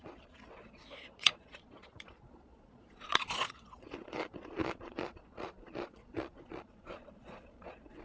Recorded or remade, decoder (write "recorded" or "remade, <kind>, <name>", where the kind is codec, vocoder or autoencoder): remade, vocoder, Vocos